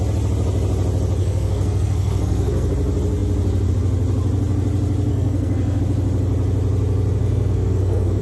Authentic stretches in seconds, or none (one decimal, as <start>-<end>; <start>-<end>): 0.0-1.2; 2.7-5.1; 5.8-7.2